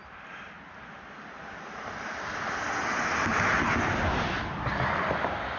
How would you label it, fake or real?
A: real